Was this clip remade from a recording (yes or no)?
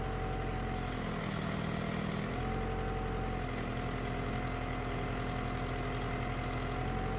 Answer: no